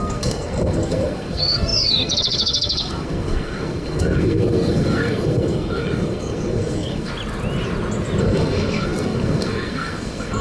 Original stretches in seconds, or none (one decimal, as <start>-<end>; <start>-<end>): 7.1-8.2